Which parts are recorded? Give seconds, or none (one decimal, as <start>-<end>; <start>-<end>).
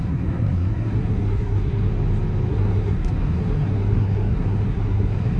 1.9-2.5